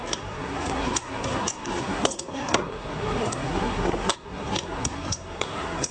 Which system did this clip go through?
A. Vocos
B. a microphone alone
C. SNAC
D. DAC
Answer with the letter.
C